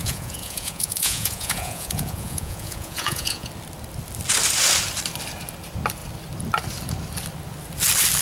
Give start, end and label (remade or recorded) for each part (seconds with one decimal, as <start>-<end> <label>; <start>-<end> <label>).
0.0-3.5 remade; 3.5-8.2 recorded